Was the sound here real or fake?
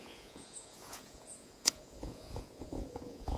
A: fake